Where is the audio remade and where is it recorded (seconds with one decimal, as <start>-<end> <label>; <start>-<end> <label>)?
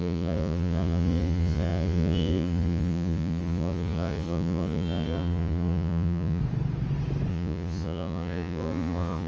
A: 0.0-6.4 remade; 6.4-7.3 recorded; 7.3-9.3 remade